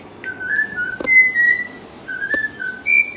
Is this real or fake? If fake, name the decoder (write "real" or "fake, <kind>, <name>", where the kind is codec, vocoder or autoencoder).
real